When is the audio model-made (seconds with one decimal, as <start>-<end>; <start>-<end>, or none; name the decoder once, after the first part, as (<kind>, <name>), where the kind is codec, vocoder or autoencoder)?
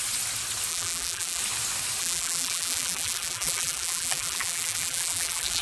0.7-1.4 (vocoder, BigVGAN v2); 2.0-5.6